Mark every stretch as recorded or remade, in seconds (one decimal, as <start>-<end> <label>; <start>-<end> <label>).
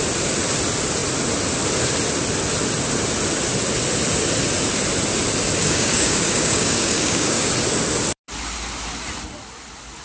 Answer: 0.0-5.6 recorded; 5.6-7.5 remade; 7.5-10.0 recorded